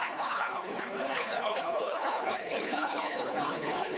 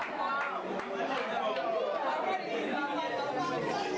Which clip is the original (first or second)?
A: second